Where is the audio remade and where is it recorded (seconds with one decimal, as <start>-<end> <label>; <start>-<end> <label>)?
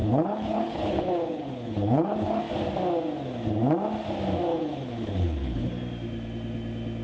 0.0-2.4 remade; 2.4-4.5 recorded; 4.5-5.7 remade; 5.7-7.0 recorded